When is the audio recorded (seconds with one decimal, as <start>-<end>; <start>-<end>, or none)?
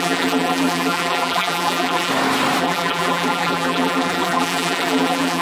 2.1-2.6